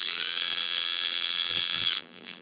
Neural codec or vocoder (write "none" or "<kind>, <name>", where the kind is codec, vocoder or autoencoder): vocoder, BigVGAN v2